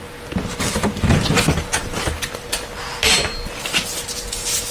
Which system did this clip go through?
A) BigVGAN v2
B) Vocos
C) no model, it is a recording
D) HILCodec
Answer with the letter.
C